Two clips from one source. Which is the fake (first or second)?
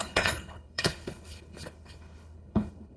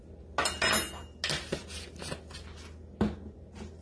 first